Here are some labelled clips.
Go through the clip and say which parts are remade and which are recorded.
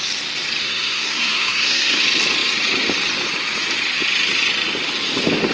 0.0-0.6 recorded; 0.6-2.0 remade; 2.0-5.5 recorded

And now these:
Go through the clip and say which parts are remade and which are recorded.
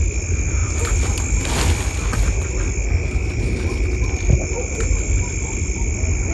0.0-6.3 recorded